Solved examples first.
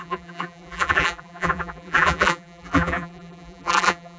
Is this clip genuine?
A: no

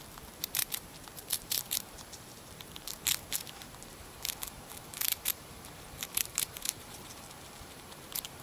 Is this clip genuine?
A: no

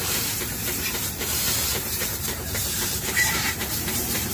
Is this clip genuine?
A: no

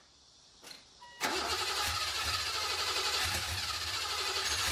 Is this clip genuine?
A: yes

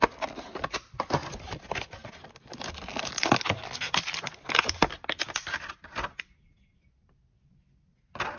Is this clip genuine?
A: yes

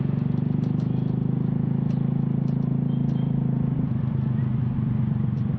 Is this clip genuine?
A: yes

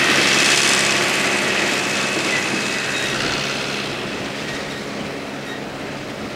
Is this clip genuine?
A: yes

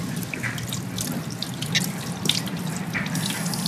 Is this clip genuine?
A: yes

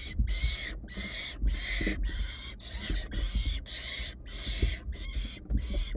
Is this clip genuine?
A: no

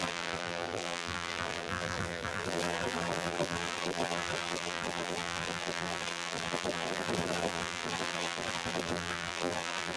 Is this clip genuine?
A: no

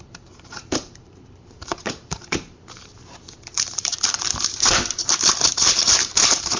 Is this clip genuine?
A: no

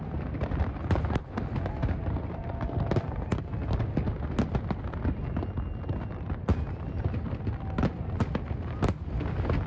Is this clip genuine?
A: yes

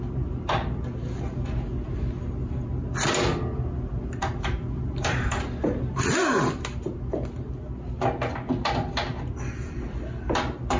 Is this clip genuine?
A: yes